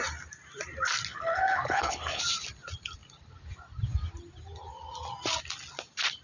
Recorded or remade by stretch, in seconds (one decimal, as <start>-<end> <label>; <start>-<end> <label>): 0.0-1.1 recorded; 1.1-2.2 remade; 2.2-6.2 recorded